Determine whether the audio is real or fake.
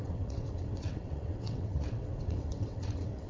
fake